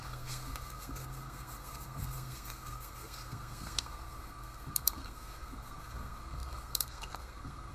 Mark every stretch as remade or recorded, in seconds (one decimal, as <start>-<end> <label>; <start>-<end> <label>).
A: 0.0-7.7 remade